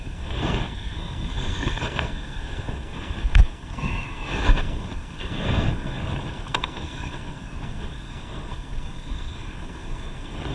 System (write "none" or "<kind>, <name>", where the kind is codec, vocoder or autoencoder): codec, SNAC